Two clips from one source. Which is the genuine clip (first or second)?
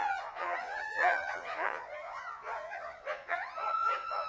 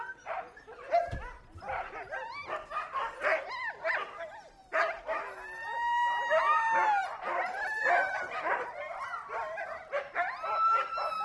second